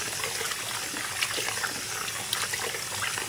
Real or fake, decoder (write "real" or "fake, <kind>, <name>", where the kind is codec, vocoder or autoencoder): real